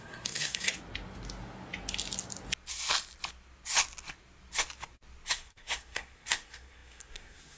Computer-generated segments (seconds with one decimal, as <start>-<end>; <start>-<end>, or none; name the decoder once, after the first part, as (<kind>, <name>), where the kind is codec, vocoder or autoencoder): 0.0-0.7 (codec, SNAC); 5.3-7.6